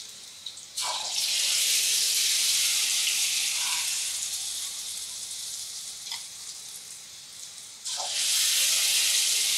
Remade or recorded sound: remade